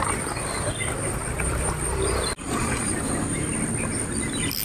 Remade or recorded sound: recorded